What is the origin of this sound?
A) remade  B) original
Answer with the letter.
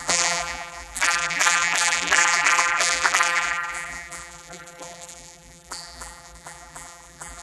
A